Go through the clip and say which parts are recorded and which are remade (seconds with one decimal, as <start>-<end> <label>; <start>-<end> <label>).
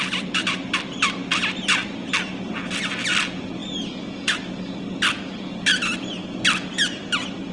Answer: 0.0-7.5 recorded